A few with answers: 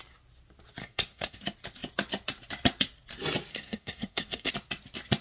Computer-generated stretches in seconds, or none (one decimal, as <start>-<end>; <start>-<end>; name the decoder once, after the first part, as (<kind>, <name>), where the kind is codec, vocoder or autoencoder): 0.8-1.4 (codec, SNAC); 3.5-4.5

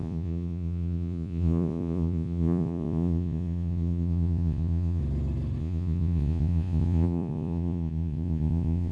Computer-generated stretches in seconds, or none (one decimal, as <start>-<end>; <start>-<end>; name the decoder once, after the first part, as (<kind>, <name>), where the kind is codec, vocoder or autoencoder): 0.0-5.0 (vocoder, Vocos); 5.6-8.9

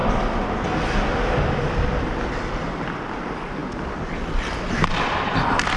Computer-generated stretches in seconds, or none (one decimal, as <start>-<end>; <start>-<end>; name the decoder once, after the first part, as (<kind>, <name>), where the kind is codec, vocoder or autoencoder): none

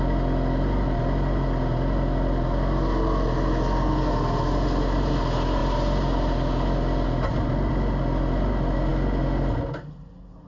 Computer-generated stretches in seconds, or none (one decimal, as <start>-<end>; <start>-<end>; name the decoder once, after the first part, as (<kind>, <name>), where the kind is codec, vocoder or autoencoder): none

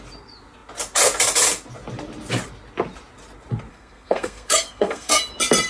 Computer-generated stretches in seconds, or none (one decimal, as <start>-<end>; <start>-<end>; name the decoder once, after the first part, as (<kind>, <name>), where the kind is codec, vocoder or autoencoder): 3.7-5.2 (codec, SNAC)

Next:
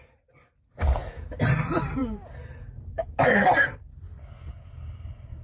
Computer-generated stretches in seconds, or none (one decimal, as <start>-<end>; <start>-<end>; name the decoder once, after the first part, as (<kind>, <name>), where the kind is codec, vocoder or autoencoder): 1.0-1.5 (vocoder, BigVGAN v2)